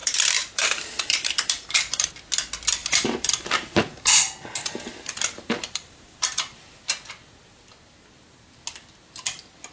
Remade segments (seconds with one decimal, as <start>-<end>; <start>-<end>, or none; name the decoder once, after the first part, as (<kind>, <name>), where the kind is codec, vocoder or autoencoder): 0.0-2.1 (vocoder, BigVGAN v2); 2.8-6.9